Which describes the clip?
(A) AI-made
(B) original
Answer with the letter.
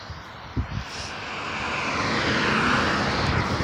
B